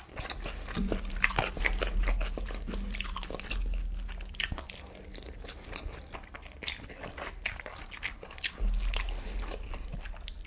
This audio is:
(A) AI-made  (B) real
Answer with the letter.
B